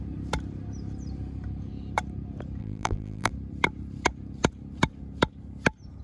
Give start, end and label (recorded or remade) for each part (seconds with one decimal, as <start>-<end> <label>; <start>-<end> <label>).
0.0-2.6 recorded; 2.6-3.3 remade; 3.3-6.0 recorded